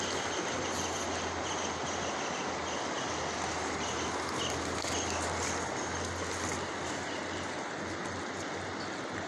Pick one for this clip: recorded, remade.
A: recorded